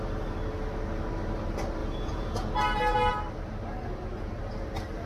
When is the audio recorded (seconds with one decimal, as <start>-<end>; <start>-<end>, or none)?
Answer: 0.0-1.8; 2.5-5.1